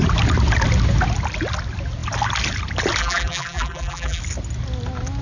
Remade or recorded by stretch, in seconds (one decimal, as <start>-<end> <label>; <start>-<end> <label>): 0.0-3.0 recorded; 3.0-4.2 remade; 4.2-5.2 recorded